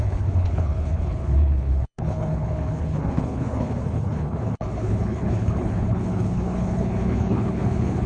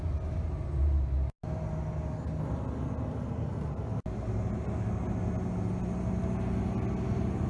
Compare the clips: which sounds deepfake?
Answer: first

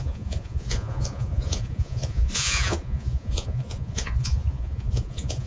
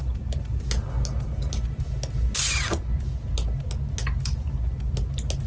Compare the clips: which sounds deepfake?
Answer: first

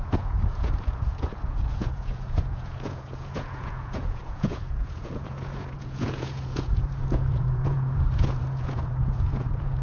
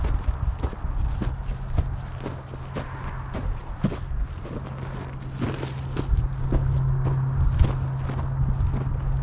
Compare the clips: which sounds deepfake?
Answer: first